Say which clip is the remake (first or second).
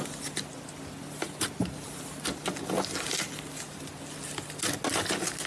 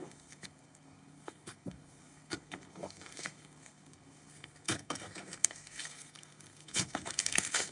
second